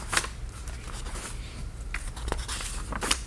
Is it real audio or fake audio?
real